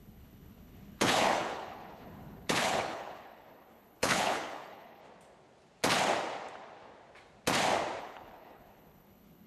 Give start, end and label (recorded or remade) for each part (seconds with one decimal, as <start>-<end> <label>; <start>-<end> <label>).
0.0-5.0 remade; 5.0-8.0 recorded; 8.0-9.5 remade